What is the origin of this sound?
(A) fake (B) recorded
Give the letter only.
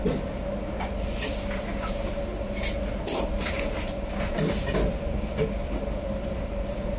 B